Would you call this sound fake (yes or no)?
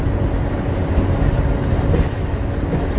no